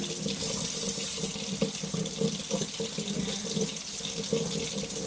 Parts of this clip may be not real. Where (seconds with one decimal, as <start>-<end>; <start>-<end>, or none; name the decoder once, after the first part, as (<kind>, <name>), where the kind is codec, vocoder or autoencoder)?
none